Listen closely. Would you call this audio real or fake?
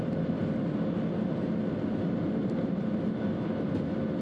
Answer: real